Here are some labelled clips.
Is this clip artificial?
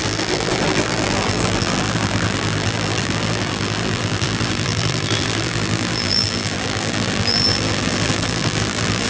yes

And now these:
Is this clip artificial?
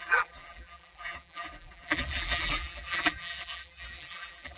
yes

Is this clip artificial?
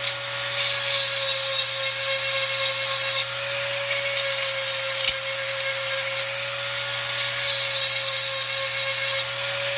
no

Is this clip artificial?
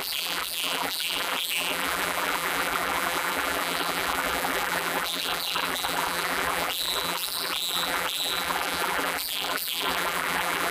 yes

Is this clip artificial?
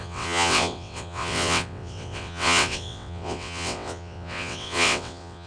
yes